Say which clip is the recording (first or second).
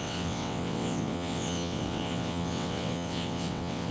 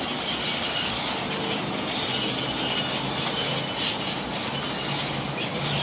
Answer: second